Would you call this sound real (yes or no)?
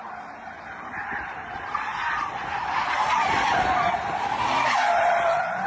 yes